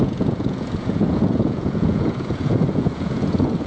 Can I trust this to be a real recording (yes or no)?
no